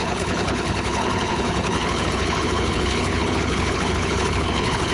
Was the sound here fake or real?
fake